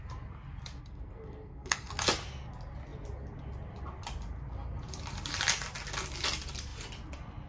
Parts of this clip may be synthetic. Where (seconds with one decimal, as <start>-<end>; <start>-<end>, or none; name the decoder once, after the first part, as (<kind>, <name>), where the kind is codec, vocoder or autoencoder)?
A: 0.8-1.9 (codec, SNAC)